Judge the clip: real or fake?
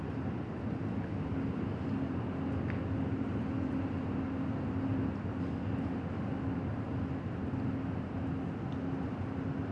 real